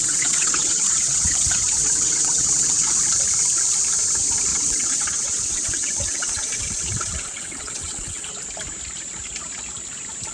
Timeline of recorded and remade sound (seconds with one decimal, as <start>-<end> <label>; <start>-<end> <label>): 0.0-2.9 remade; 2.9-4.5 recorded; 4.5-8.3 remade; 8.3-10.3 recorded